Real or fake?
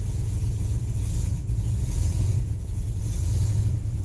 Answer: fake